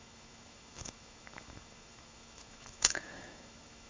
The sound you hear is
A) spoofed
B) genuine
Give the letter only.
A